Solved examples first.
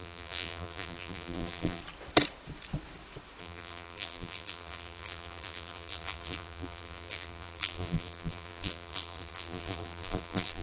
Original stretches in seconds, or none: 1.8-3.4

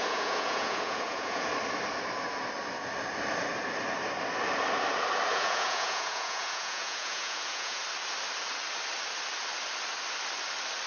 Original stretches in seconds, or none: 1.5-5.3; 7.8-10.9

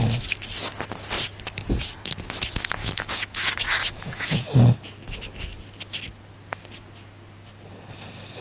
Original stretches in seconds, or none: 0.0-2.8; 4.6-8.4

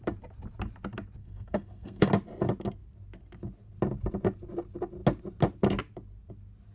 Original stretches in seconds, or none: 0.0-1.2; 2.1-6.7

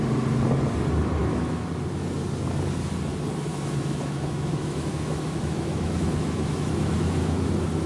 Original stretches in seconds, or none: 0.0-1.2; 1.7-3.5; 7.5-7.9

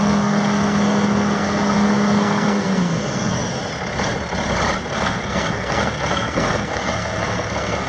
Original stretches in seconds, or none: 3.4-4.9